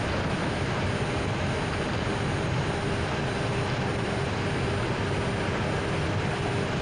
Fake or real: real